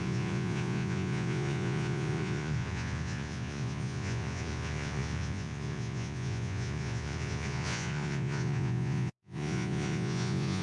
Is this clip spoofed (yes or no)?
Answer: yes